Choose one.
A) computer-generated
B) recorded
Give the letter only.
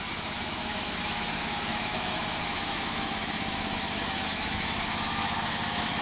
A